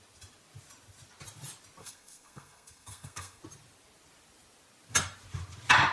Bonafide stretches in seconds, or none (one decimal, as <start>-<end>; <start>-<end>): 0.0-1.8; 3.4-5.9

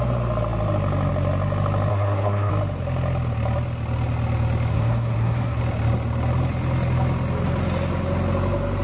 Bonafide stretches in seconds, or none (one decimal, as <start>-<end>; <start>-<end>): 0.0-1.9; 2.5-4.7; 5.6-8.8

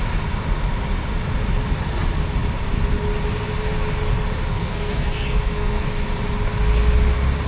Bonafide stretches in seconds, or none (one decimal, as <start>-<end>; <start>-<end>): 0.0-4.5; 5.9-7.5